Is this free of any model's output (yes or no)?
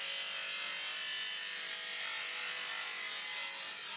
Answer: yes